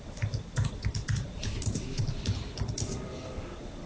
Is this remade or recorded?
recorded